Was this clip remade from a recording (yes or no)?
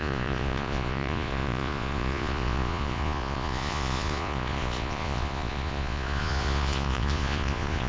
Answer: yes